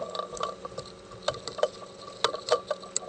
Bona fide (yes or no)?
yes